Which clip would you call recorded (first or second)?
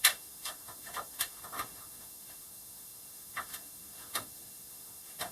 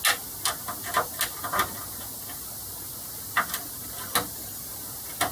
second